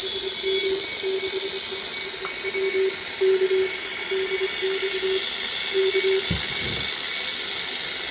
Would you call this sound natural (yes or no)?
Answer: yes